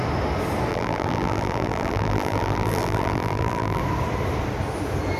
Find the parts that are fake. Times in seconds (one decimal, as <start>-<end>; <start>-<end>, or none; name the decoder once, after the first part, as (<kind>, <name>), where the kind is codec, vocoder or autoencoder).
0.7-3.8 (vocoder, BigVGAN v2)